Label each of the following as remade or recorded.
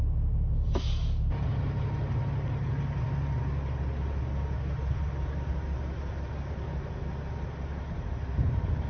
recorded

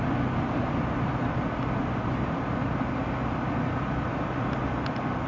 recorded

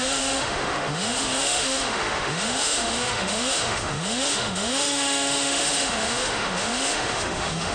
remade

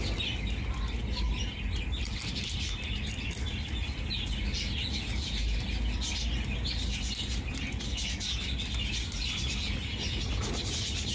recorded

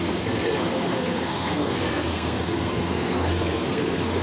remade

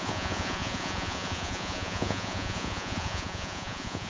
remade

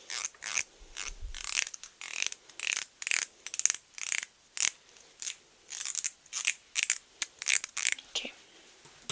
recorded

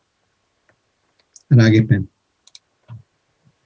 recorded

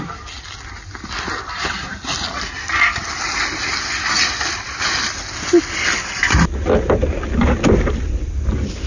recorded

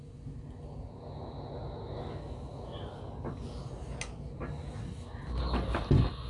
recorded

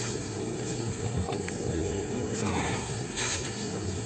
remade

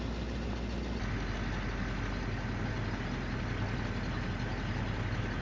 recorded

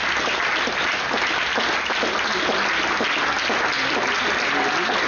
recorded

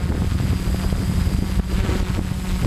recorded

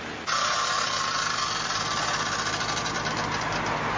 recorded